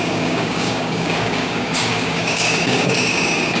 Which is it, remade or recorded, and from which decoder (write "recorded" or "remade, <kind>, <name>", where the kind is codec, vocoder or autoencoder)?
remade, codec, DAC